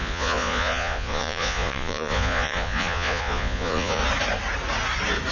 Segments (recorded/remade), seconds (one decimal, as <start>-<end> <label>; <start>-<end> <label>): 0.0-4.0 remade; 4.0-5.3 recorded